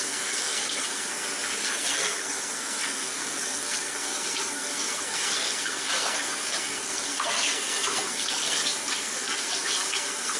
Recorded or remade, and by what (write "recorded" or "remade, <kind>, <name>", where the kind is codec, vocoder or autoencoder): remade, codec, SNAC